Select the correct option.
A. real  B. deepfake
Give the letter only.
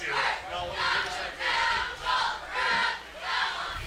A